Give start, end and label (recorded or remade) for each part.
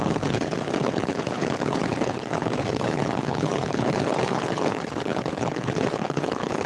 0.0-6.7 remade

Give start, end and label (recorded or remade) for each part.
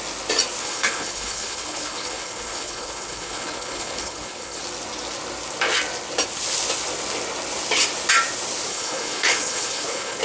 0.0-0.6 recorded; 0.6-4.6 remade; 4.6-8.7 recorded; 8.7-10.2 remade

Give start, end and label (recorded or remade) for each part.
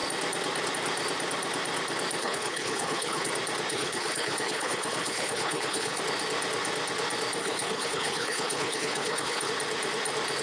0.0-2.2 recorded; 2.2-3.3 remade; 3.3-3.7 recorded; 3.7-6.0 remade; 6.0-7.4 recorded; 7.4-9.5 remade; 9.5-10.4 recorded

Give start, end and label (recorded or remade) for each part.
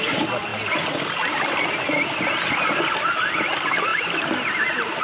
0.0-5.0 recorded